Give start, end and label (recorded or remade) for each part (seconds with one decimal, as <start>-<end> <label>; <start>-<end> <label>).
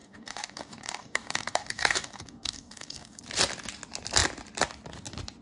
0.0-3.2 remade; 3.2-5.4 recorded